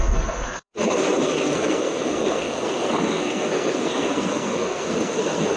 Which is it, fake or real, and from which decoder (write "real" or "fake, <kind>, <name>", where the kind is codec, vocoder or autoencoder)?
fake, codec, SNAC